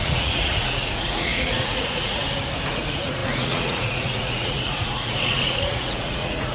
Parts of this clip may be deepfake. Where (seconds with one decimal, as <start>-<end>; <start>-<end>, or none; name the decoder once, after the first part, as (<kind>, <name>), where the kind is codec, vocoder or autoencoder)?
0.0-2.2 (vocoder, Vocos); 2.7-6.5